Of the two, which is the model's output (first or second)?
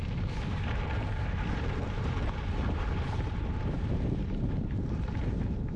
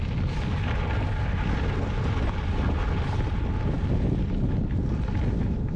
first